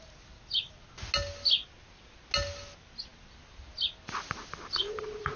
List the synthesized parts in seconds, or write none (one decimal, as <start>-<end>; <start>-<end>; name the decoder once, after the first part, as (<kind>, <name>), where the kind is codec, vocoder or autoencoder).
none